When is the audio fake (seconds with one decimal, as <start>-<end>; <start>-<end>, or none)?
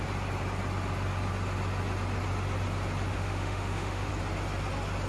3.1-4.1